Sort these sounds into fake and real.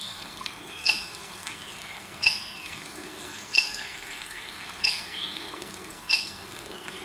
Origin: fake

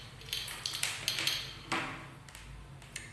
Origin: real